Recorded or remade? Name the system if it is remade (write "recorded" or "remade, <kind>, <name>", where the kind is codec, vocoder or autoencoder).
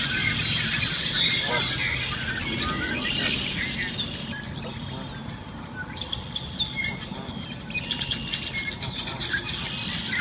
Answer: recorded